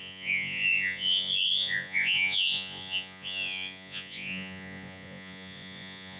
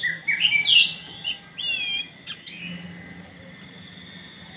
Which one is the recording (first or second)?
second